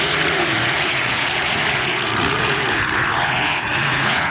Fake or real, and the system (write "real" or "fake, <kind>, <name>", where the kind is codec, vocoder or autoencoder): fake, vocoder, Vocos